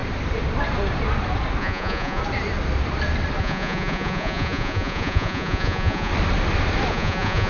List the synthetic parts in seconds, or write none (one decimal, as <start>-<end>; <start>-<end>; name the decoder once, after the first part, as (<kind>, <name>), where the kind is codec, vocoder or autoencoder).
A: 1.6-2.2 (vocoder, Vocos); 3.4-6.1; 6.9-7.5